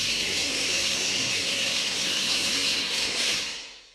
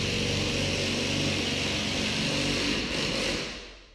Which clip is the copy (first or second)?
first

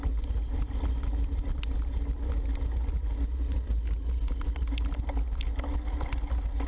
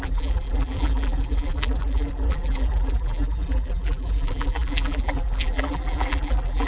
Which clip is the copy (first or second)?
second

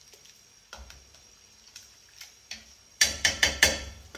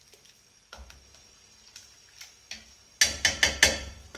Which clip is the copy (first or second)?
first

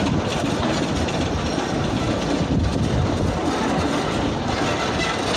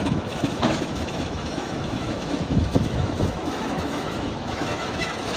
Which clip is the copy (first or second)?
second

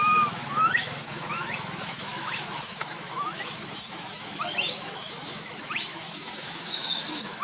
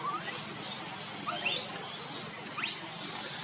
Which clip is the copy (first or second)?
first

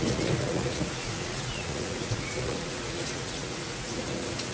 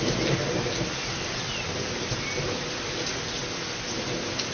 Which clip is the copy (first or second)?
first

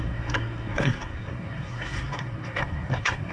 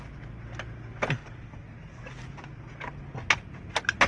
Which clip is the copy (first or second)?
first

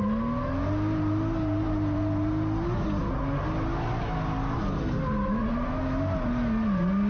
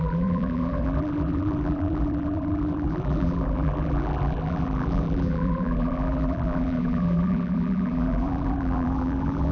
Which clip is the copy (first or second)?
second